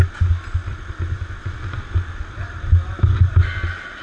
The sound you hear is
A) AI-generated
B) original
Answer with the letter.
B